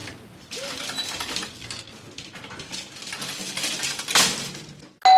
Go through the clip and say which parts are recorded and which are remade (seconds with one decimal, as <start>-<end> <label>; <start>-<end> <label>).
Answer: 0.0-5.2 recorded